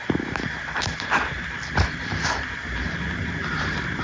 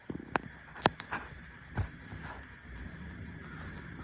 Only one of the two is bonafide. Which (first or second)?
second